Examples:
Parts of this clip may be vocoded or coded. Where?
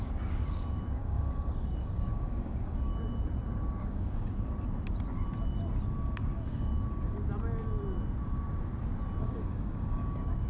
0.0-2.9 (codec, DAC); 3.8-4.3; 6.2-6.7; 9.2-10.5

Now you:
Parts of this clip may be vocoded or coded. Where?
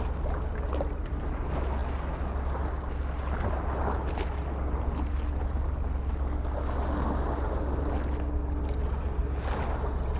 none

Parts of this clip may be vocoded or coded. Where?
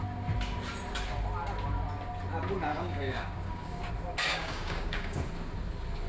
2.7-3.9 (codec, DAC); 4.3-5.2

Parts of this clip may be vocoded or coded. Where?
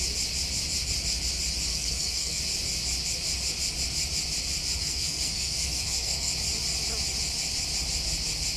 1.7-2.4 (codec, SNAC); 4.8-6.3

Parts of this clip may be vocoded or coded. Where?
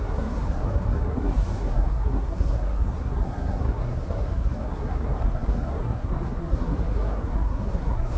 0.0-8.2 (codec, SNAC)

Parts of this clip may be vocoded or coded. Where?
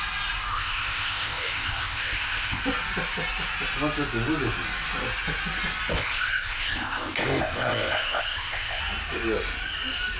0.5-2.6 (codec, ZipCodec); 5.9-8.8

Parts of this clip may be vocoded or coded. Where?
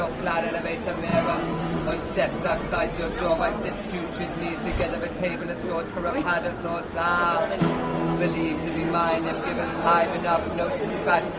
1.1-3.3 (vocoder, Vocos)